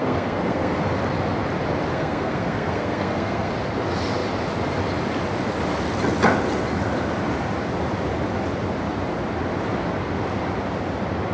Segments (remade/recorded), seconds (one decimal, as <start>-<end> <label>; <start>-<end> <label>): 0.0-0.8 remade; 0.8-1.9 recorded; 1.9-3.5 remade; 3.5-11.3 recorded